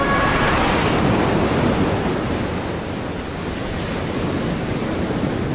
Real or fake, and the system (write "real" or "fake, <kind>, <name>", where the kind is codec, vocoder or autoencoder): real